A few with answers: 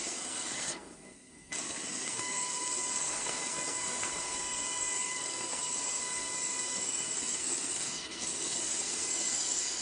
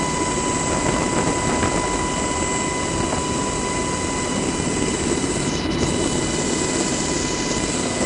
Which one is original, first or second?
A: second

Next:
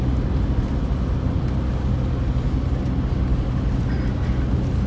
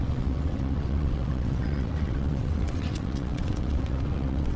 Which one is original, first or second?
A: first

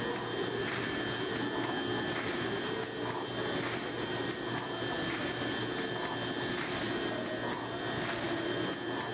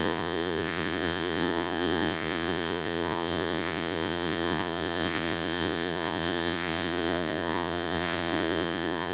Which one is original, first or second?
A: first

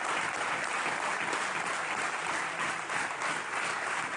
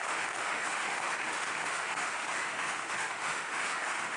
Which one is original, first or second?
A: first